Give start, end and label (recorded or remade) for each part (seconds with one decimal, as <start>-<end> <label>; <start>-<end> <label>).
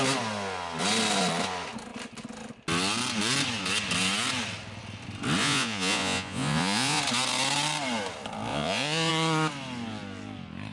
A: 0.0-5.4 recorded; 5.4-7.0 remade; 7.0-8.5 recorded; 8.5-9.1 remade; 9.1-10.7 recorded